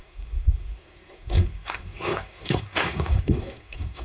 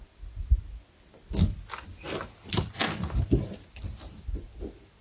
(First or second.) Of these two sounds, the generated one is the first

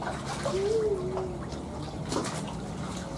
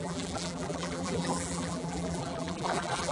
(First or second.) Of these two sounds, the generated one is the second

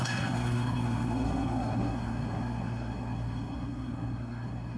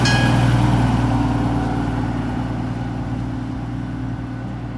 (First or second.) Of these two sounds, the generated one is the first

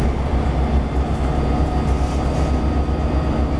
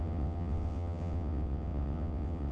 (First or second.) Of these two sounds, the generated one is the second